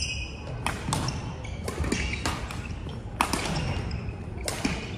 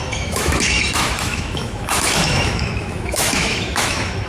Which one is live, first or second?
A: first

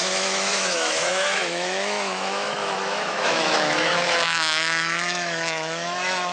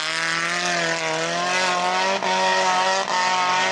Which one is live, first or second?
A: second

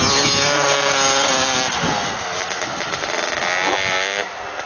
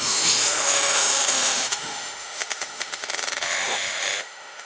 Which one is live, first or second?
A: first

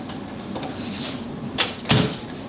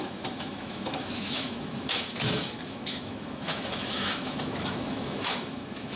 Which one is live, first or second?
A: first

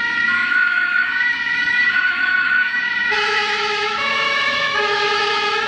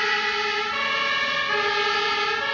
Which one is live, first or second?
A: second